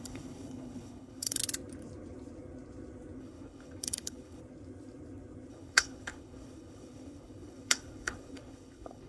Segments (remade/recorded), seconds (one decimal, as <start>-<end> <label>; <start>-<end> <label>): 0.0-1.4 remade; 1.4-3.2 recorded; 3.2-4.4 remade; 4.4-5.5 recorded; 5.5-9.1 remade